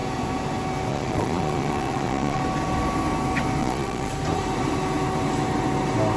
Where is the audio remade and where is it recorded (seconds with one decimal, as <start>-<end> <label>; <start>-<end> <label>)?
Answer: 0.0-0.9 recorded; 0.9-2.4 remade; 2.4-3.6 recorded; 3.6-4.1 remade; 4.1-6.2 recorded